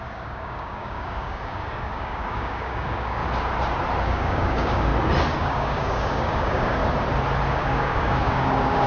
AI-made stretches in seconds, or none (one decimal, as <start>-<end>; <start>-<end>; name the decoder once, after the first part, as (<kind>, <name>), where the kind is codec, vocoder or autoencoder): 0.0-3.2 (codec, DAC); 4.0-4.9; 5.4-6.8; 7.5-8.9